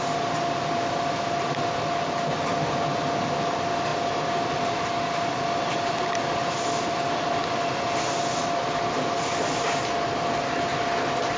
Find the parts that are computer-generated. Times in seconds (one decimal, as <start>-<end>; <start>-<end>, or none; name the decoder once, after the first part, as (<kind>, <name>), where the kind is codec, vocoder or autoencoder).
none